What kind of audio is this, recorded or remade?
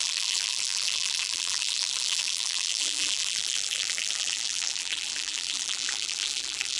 remade